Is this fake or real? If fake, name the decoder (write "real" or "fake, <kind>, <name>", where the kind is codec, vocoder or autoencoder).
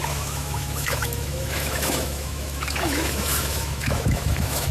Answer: fake, autoencoder, DAC-VAE